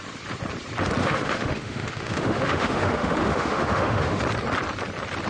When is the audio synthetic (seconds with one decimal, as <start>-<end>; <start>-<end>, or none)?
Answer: 1.0-4.2